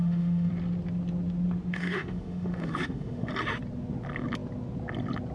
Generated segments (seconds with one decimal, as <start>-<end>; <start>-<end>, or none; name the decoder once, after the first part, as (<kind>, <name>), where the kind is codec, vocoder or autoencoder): 0.0-0.5 (autoencoder, DAC-VAE); 1.7-3.3